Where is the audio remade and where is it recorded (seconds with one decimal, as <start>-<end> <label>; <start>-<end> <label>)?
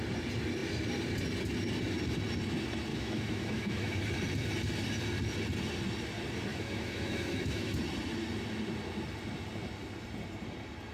0.0-2.9 recorded; 2.9-4.0 remade; 4.0-6.5 recorded; 6.5-7.8 remade; 7.8-10.9 recorded